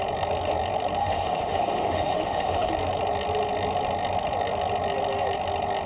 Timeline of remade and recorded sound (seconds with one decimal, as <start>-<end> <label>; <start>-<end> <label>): 0.0-1.0 recorded; 1.0-2.7 remade; 2.7-5.9 recorded